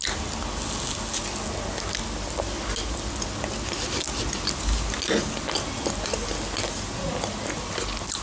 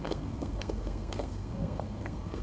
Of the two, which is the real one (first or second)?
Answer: first